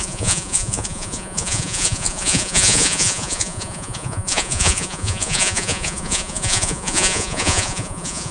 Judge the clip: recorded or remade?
remade